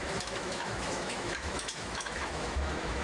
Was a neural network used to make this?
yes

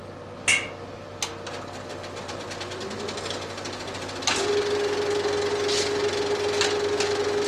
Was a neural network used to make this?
no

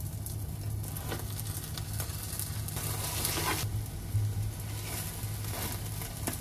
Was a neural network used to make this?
no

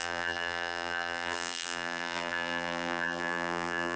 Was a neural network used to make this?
yes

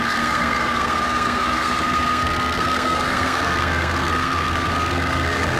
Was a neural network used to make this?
yes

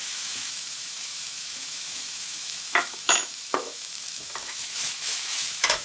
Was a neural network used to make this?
yes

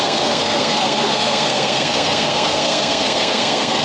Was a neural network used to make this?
yes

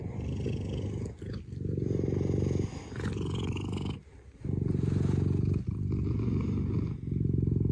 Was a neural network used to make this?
no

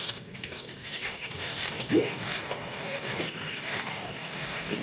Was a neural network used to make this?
yes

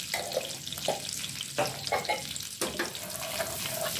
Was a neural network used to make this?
no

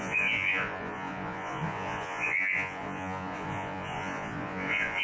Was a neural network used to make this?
yes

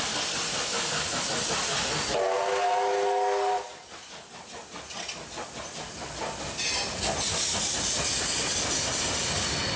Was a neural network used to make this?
no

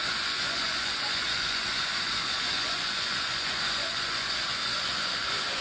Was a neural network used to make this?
yes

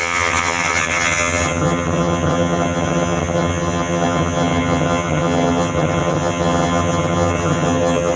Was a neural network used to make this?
yes